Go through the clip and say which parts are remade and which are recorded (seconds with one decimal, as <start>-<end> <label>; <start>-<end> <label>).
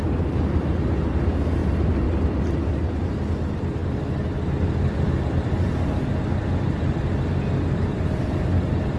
0.0-9.0 recorded